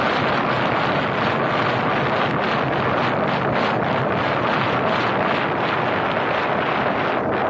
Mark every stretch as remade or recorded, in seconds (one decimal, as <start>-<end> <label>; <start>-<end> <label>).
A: 0.0-7.5 recorded